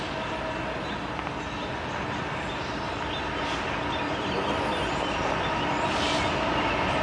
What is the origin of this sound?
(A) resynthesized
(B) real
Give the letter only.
B